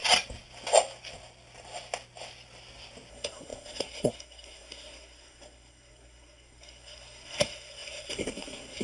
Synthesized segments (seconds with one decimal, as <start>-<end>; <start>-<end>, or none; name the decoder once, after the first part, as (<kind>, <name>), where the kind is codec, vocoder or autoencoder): 3.1-8.8 (codec, SNAC)